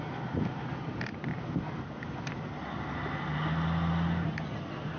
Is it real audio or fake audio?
real